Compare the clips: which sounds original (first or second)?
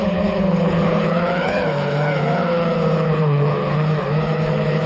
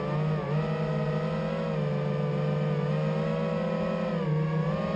second